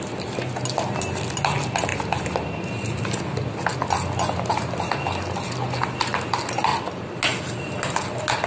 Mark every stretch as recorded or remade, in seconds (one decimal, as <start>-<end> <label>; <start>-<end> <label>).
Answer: 0.0-8.5 recorded